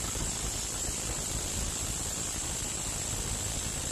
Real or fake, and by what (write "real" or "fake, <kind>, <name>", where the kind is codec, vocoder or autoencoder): fake, vocoder, BigVGAN v2